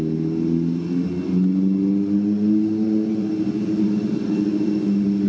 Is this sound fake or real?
real